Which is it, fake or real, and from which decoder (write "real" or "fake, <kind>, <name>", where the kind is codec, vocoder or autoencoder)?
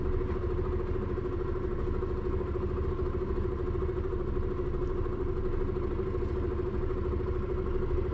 real